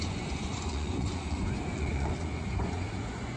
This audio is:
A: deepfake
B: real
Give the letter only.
A